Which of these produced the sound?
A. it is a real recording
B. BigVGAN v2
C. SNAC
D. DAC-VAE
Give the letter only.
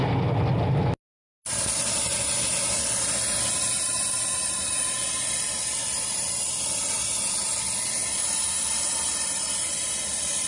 A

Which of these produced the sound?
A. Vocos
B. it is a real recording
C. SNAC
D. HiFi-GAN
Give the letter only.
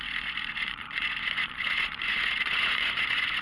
A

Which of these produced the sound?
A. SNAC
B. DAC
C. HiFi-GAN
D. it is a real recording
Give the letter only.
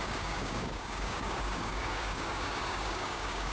B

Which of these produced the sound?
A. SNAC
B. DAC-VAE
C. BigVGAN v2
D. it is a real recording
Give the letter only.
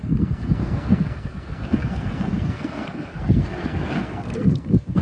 A